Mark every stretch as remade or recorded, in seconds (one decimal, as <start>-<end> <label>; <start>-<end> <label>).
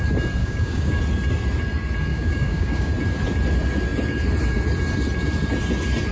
0.0-0.4 recorded; 0.4-1.0 remade; 1.0-2.1 recorded; 2.1-2.9 remade; 2.9-6.1 recorded